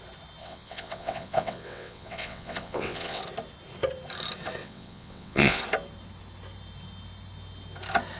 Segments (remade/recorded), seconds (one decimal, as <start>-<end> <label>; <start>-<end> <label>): 0.0-0.4 recorded; 0.4-3.2 remade; 3.2-4.6 recorded; 4.6-5.6 remade; 5.6-8.2 recorded